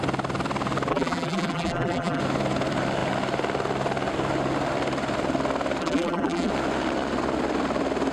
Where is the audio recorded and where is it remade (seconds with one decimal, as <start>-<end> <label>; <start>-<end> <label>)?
0.0-0.9 recorded; 0.9-2.2 remade; 2.2-5.8 recorded; 5.8-6.5 remade; 6.5-8.1 recorded

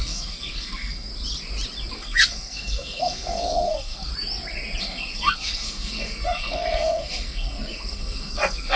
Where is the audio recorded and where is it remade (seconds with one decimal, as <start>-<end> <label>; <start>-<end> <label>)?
0.0-1.1 remade; 1.1-1.9 recorded; 1.9-4.1 remade; 4.1-4.8 recorded; 4.8-8.8 remade

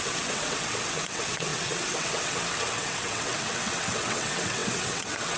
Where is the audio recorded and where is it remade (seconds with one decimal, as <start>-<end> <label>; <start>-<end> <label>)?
0.0-5.4 remade